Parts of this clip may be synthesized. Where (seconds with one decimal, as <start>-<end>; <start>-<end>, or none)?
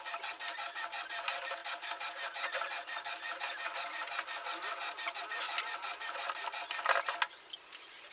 none